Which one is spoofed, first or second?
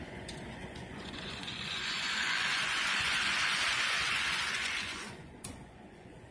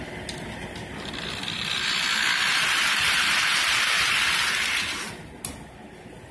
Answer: first